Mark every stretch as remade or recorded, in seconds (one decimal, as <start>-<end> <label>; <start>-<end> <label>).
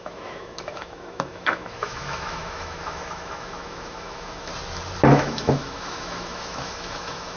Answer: 0.0-4.5 remade; 4.5-5.1 recorded; 5.1-7.4 remade